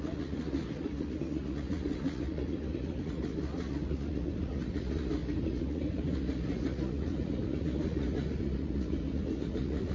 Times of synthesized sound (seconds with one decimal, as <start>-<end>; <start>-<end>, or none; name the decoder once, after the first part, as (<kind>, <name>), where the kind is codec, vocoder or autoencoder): 0.0-9.9 (vocoder, Vocos)